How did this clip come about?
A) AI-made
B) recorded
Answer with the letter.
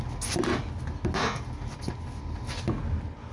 B